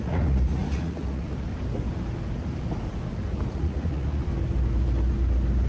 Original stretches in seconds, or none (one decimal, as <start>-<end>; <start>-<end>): 1.5-3.5; 4.3-5.7